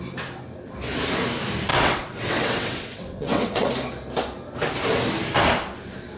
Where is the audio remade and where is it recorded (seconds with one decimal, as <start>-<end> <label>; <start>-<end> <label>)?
0.0-1.7 recorded; 1.7-3.7 remade; 3.7-6.2 recorded